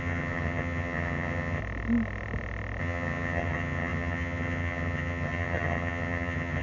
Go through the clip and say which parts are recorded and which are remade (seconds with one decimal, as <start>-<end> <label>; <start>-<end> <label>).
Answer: 0.0-1.6 remade; 1.6-2.8 recorded; 2.8-6.6 remade

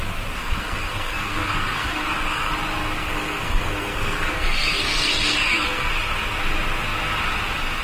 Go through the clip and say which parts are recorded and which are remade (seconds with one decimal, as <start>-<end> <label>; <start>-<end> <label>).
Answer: 0.0-0.4 recorded; 0.4-2.5 remade; 2.5-3.0 recorded; 3.0-5.9 remade; 5.9-7.8 recorded

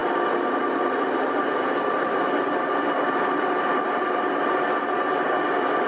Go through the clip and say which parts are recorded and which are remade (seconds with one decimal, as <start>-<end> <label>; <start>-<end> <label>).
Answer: 0.0-5.9 recorded

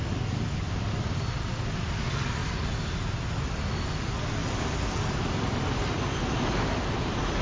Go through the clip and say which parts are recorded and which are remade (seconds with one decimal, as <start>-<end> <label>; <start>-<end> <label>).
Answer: 0.0-7.4 recorded

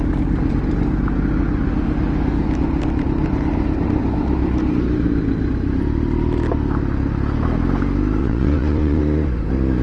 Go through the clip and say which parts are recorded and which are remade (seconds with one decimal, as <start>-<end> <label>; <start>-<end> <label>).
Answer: 0.0-8.2 recorded; 8.2-9.0 remade; 9.0-9.8 recorded